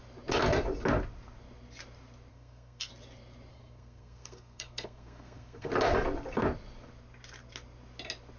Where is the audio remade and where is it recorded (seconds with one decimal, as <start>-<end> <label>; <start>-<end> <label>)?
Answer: 0.0-2.3 recorded; 2.3-2.9 remade; 2.9-3.5 recorded; 3.5-5.7 remade; 5.7-8.4 recorded